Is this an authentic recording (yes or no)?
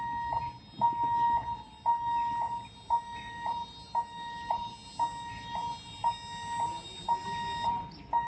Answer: yes